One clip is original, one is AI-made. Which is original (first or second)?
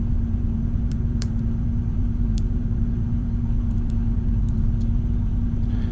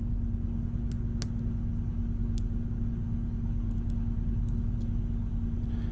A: second